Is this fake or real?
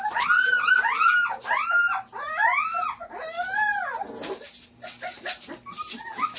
real